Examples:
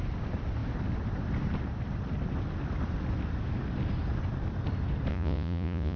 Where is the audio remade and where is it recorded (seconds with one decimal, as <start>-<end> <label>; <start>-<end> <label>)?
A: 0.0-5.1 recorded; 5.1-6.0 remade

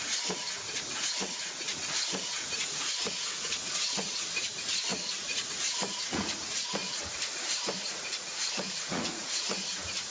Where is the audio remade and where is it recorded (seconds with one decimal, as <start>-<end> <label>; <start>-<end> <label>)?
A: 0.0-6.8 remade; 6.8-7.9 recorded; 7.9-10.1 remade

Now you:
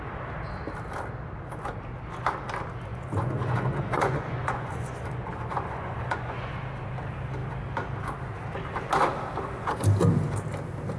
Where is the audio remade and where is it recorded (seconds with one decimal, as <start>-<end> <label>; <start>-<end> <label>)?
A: 0.0-2.9 recorded; 2.9-6.5 remade; 6.5-11.0 recorded

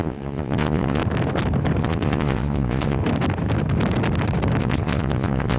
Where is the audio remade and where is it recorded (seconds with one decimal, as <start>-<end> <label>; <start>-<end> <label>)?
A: 0.0-1.0 remade; 1.0-1.8 recorded; 1.8-3.0 remade; 3.0-4.6 recorded; 4.6-5.6 remade

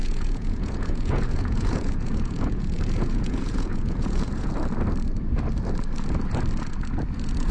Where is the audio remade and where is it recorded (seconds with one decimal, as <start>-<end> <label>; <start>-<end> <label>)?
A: 0.0-4.5 remade; 4.5-7.5 recorded

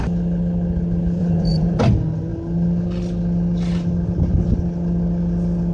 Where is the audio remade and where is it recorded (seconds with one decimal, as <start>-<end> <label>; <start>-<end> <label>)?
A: 0.0-1.2 recorded; 1.2-1.8 remade; 1.8-5.7 recorded

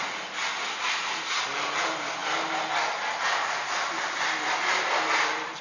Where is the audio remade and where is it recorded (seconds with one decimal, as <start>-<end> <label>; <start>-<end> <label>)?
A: 0.0-5.6 recorded

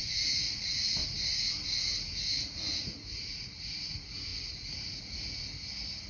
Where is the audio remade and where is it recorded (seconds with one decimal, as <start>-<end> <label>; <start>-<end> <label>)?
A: 0.0-1.0 remade; 1.0-2.3 recorded; 2.3-5.5 remade; 5.5-6.1 recorded